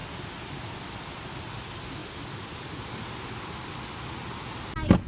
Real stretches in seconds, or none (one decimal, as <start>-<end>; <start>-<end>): 0.0-5.1